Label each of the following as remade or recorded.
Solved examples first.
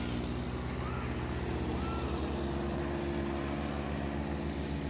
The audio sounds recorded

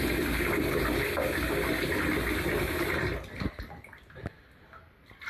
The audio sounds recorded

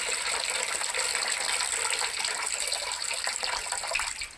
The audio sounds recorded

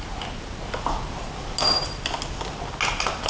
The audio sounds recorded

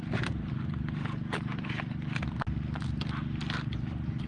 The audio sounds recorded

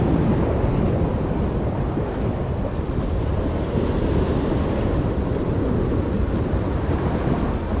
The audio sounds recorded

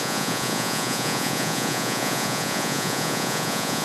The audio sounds remade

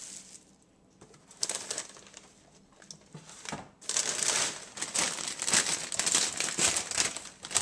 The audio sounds recorded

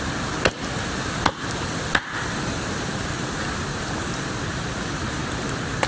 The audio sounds recorded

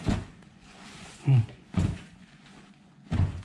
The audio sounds remade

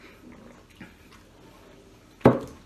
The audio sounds recorded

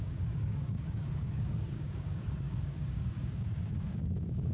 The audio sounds remade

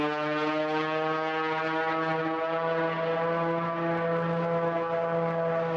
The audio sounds recorded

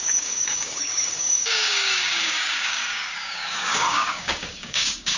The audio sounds remade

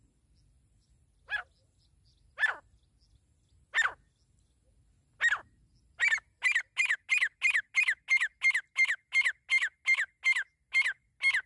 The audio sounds recorded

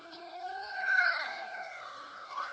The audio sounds remade